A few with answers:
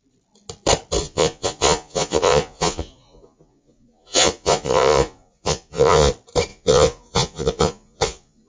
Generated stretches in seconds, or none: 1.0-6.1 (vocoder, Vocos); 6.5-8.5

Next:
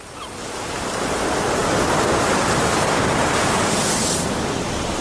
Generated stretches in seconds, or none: 1.6-4.6 (vocoder, BigVGAN v2)

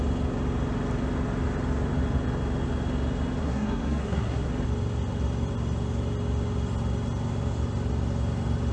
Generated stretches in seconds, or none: 3.4-4.5 (codec, SNAC)

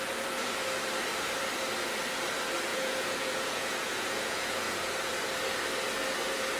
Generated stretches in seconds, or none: 2.7-4.9 (vocoder, Vocos)

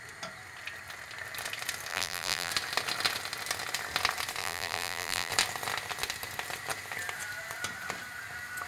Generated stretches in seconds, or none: 1.9-2.5 (vocoder, BigVGAN v2); 4.4-5.3

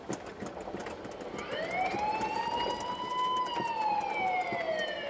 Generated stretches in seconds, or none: none